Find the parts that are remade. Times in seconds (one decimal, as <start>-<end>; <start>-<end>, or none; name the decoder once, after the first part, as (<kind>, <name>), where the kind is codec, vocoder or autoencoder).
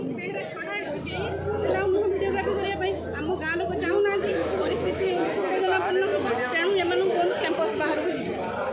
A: 4.3-5.1 (autoencoder, DAC-VAE)